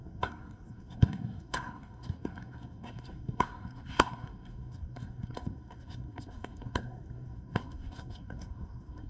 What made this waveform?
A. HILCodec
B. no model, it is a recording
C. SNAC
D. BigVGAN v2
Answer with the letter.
C